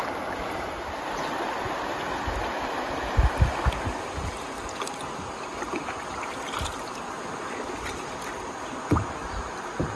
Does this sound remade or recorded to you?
recorded